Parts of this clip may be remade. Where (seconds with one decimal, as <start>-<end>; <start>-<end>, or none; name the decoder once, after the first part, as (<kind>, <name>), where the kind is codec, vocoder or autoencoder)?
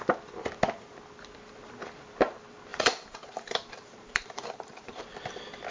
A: 2.7-5.2 (vocoder, BigVGAN v2)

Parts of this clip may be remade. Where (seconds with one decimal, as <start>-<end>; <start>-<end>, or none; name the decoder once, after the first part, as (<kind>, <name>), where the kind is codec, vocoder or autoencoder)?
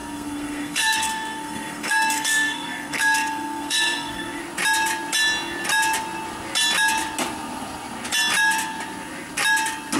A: 0.0-4.4 (codec, SNAC)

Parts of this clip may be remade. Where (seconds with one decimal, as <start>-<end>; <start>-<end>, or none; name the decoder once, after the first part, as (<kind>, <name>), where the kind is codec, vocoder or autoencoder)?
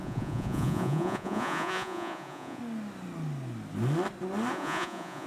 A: 0.0-2.6 (vocoder, Vocos); 4.5-5.3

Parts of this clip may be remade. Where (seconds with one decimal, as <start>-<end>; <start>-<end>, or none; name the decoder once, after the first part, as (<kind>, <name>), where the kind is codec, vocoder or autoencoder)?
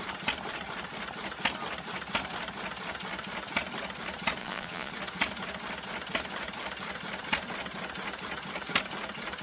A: 4.4-4.9 (vocoder, Vocos)